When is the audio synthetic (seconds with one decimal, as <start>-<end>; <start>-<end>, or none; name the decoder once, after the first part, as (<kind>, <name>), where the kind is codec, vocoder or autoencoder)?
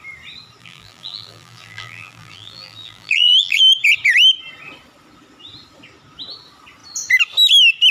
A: 0.6-3.6 (vocoder, BigVGAN v2)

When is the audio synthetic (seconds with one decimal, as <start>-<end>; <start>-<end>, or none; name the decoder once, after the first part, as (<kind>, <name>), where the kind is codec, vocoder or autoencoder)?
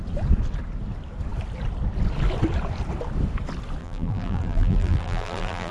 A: 3.8-5.7 (vocoder, BigVGAN v2)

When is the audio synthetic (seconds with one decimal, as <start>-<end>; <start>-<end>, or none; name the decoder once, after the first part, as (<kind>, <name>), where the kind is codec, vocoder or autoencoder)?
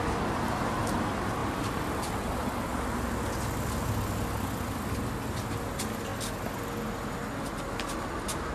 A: 1.4-2.1 (vocoder, BigVGAN v2)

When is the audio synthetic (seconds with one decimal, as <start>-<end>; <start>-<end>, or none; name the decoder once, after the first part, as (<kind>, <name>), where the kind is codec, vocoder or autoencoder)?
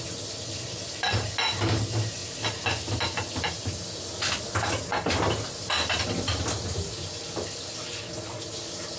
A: 2.2-4.0 (vocoder, BigVGAN v2); 4.9-6.4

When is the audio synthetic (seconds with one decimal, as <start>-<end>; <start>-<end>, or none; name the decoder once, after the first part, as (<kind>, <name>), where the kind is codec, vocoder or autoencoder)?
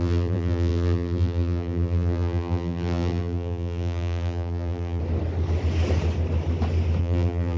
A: 0.0-5.0 (vocoder, BigVGAN v2); 7.0-7.6